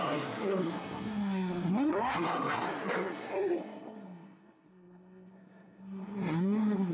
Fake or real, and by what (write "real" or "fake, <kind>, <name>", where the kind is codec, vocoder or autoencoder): fake, codec, SNAC